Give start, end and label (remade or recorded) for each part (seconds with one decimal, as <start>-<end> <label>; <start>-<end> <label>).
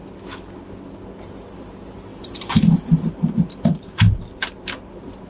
0.0-2.1 recorded; 2.1-4.2 remade; 4.2-5.3 recorded